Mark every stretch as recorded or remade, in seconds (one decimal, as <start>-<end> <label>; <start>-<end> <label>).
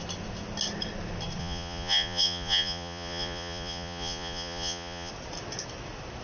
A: 0.0-1.4 recorded; 1.4-5.1 remade; 5.1-6.2 recorded